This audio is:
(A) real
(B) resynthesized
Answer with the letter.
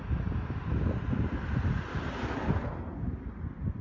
A